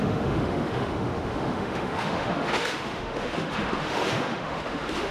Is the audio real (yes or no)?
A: no